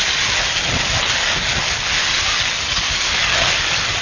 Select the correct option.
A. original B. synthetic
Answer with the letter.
A